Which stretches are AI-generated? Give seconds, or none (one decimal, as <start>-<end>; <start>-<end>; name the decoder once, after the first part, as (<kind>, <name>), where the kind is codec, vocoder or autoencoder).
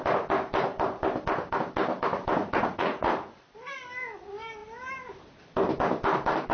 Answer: 2.4-3.1 (vocoder, Vocos)